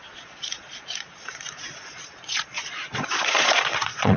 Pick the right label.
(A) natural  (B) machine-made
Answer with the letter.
B